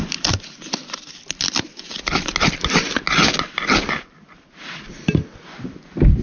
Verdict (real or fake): real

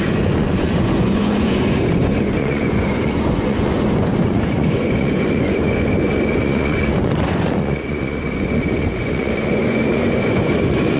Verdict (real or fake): fake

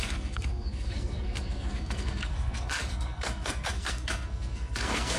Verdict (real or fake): fake